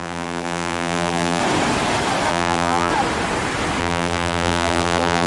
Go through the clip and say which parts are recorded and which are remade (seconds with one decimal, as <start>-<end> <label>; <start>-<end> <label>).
0.0-1.4 remade; 1.4-2.3 recorded; 2.3-2.9 remade; 2.9-3.8 recorded; 3.8-5.3 remade